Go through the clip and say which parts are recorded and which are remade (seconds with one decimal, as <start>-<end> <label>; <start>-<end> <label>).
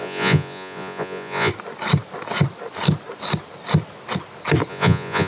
0.0-1.5 remade; 1.5-4.7 recorded; 4.7-5.3 remade